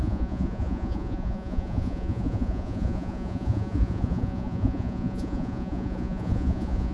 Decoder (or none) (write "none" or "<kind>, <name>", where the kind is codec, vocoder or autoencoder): vocoder, Vocos